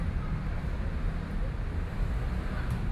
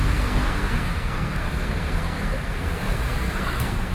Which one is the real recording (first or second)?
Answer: first